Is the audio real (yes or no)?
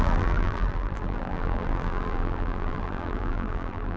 no